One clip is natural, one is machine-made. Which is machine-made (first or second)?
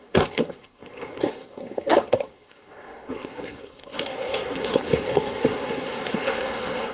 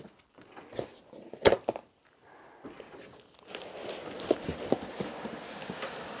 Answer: first